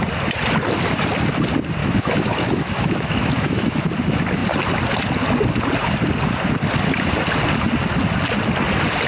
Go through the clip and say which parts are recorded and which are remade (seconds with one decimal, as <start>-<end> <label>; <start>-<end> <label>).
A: 0.0-1.8 recorded; 1.8-3.8 remade; 3.8-9.1 recorded

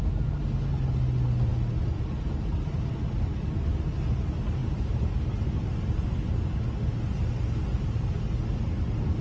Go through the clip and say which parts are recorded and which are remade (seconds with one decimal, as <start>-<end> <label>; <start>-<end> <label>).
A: 0.0-4.6 recorded; 4.6-5.9 remade; 5.9-7.7 recorded; 7.7-8.4 remade; 8.4-9.2 recorded

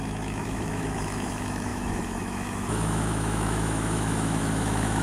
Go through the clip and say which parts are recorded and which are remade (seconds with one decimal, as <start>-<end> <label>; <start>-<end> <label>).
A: 0.0-5.0 remade